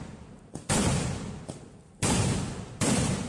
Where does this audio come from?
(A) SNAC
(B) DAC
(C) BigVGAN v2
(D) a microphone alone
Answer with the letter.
D